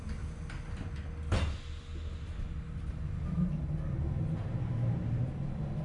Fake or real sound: real